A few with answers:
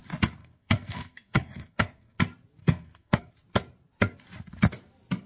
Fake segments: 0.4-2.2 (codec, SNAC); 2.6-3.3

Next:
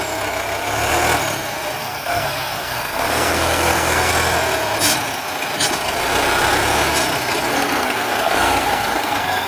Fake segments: 1.8-4.1 (codec, SNAC); 7.5-9.5

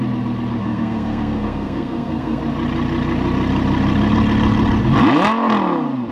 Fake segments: 0.6-2.4 (codec, SNAC)

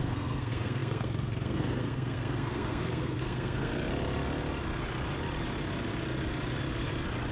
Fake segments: 0.0-3.7 (codec, SNAC)

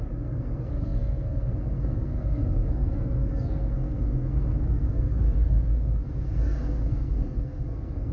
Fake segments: 0.0-8.1 (codec, SNAC)